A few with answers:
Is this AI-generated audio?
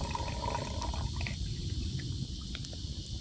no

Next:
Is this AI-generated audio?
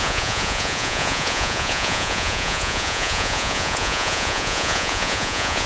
yes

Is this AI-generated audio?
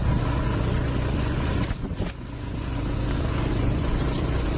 yes